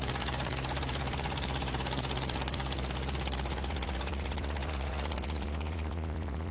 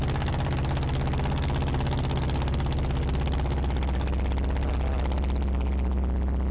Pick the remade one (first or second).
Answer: first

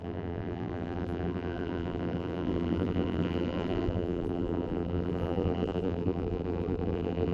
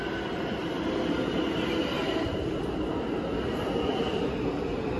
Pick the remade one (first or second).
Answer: first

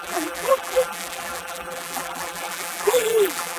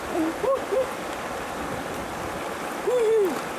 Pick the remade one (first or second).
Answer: first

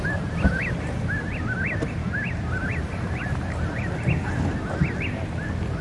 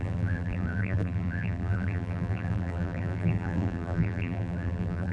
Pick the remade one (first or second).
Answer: second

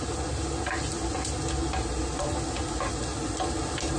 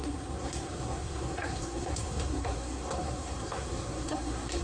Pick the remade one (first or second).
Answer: second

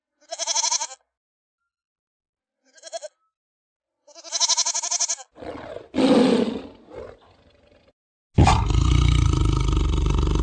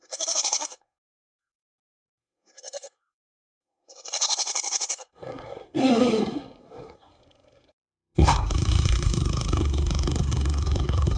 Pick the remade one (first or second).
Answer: second